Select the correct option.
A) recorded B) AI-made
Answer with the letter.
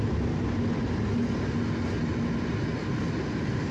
A